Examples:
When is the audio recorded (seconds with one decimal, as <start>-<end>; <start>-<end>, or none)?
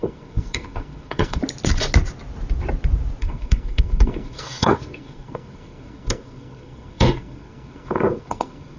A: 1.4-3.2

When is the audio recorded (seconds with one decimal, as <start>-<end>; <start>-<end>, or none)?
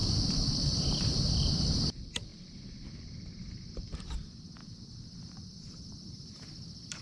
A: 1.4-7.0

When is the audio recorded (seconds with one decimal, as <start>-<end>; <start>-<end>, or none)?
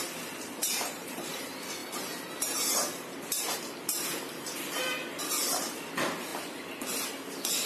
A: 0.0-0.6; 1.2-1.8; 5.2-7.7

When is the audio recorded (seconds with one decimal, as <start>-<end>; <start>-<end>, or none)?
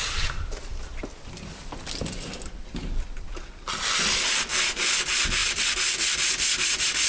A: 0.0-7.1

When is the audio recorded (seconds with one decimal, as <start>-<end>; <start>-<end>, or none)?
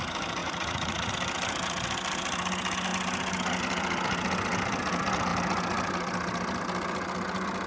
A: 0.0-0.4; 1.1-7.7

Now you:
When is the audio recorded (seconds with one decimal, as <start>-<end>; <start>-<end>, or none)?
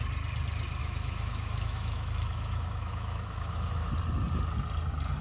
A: 0.0-0.8; 3.9-5.2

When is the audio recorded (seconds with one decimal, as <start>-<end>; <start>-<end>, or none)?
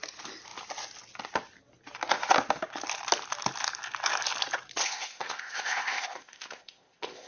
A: 0.0-4.8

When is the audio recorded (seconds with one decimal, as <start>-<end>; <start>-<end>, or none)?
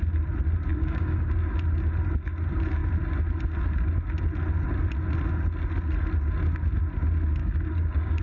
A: 0.0-0.7; 1.3-7.4